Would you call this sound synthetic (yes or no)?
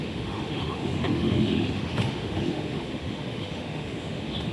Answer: yes